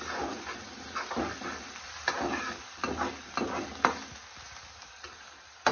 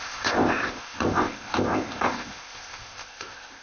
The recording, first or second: first